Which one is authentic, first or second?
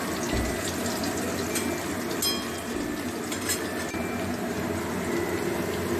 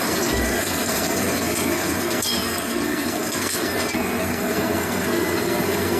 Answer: first